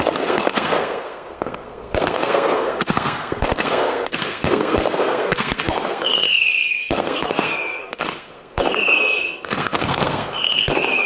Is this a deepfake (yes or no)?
yes